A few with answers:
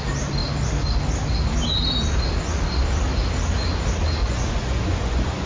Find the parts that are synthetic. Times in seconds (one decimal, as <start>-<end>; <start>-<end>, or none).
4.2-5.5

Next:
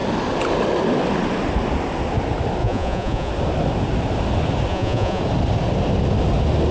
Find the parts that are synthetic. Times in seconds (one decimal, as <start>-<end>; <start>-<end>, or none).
2.6-3.3; 4.7-5.2

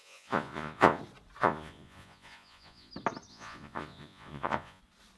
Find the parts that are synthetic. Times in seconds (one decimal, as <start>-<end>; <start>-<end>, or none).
0.0-1.0; 1.4-2.9; 3.3-4.8

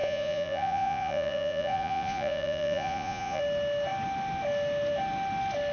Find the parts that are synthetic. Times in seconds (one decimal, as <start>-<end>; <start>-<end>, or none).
0.0-3.4

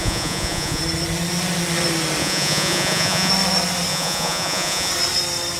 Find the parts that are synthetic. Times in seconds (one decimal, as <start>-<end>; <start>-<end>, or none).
0.0-0.8; 2.2-3.3; 3.9-4.9

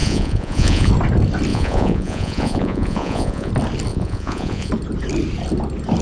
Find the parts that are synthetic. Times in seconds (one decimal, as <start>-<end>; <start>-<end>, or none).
0.0-0.9; 1.5-3.5; 3.9-4.7